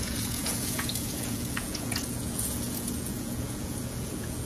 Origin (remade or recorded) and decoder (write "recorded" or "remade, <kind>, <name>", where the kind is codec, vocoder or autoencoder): remade, vocoder, Vocos